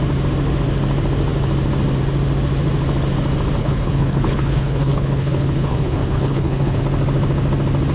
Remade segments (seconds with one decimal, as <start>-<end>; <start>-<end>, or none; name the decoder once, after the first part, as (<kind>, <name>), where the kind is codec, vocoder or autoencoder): 3.6-6.8 (codec, HILCodec)